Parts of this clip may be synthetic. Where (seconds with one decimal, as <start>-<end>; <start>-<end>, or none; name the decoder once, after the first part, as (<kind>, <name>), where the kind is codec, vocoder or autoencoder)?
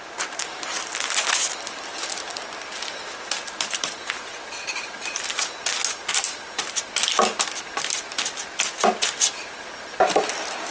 none